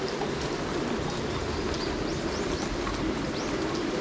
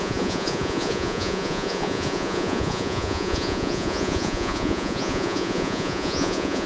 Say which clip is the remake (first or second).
second